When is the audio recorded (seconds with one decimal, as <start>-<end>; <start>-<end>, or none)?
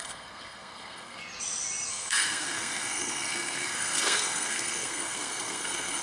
1.2-1.9